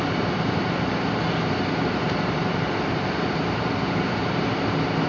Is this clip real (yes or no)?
no